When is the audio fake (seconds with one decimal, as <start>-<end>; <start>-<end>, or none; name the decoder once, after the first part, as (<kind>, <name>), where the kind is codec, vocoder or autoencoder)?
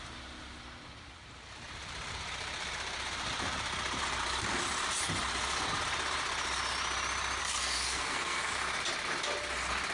7.4-8.5 (codec, SNAC)